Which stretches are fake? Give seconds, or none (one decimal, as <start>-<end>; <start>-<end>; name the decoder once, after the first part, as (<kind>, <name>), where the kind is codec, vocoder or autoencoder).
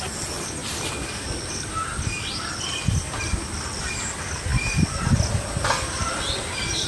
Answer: none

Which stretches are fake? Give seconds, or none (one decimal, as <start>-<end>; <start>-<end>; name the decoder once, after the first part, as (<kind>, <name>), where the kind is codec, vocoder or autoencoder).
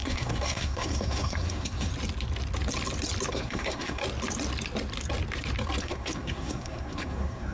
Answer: 0.0-1.9 (codec, SNAC); 3.3-4.0; 5.8-7.5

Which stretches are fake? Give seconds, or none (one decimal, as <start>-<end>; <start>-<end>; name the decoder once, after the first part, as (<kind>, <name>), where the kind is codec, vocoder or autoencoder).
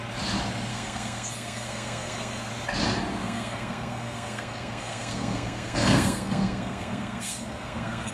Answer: 0.7-2.5 (codec, SNAC); 3.2-8.1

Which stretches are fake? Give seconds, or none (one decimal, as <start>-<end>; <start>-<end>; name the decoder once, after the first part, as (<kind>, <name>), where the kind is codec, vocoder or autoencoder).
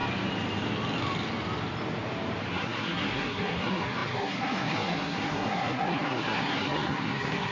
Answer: 2.5-7.5 (codec, SNAC)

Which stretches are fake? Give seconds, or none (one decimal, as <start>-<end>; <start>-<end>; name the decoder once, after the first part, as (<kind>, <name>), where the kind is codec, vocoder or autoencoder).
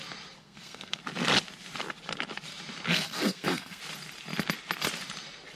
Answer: 0.4-1.0 (codec, SNAC); 2.9-3.8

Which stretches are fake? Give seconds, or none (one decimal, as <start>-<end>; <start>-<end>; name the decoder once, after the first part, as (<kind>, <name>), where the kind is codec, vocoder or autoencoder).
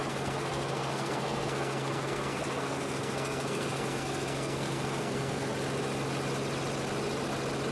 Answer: 0.0-5.5 (codec, SNAC)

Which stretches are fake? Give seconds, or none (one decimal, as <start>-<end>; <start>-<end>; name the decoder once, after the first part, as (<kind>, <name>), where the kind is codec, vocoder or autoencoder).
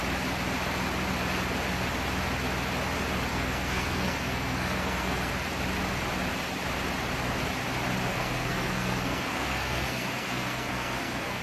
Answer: 3.3-5.3 (codec, SNAC); 8.1-11.4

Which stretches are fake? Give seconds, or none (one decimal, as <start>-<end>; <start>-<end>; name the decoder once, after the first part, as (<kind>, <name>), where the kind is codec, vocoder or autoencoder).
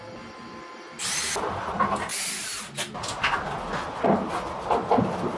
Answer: none